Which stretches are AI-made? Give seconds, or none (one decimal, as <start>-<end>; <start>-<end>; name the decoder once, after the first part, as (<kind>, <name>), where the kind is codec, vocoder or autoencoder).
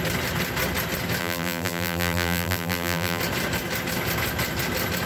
1.2-3.2 (vocoder, BigVGAN v2)